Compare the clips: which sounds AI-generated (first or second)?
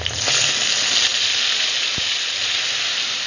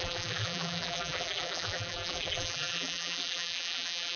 second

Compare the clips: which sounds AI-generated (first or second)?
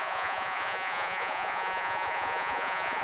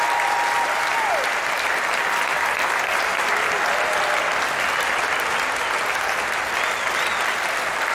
first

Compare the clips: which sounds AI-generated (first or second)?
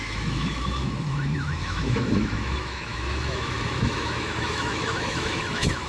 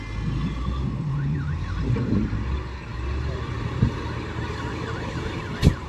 first